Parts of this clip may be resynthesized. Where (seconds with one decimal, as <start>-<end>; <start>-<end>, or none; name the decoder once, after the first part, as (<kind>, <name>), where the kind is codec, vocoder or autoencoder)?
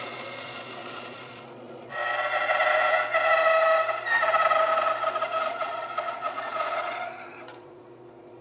0.0-2.0 (vocoder, Vocos); 5.5-8.4